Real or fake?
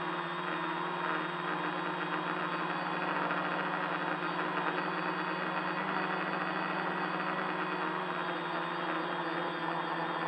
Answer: real